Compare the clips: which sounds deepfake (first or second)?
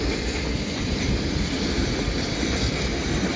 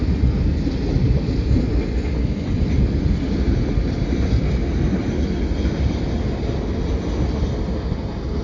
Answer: first